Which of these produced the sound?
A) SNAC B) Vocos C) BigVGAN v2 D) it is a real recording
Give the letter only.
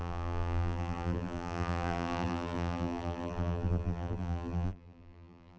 C